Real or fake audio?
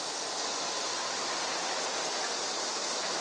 real